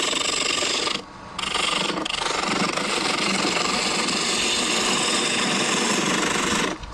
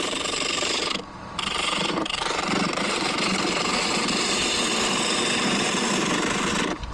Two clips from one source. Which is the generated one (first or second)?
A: second